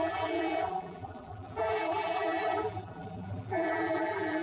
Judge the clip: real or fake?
fake